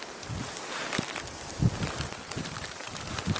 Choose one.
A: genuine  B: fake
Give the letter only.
A